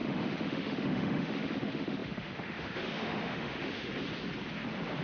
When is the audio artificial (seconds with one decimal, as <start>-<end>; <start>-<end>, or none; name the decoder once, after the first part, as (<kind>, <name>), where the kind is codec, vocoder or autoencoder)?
0.0-3.9 (autoencoder, DAC-VAE)